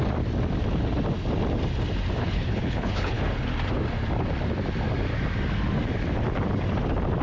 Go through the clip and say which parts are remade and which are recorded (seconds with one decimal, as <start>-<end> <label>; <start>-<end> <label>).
0.0-2.2 recorded; 2.2-3.2 remade; 3.2-7.2 recorded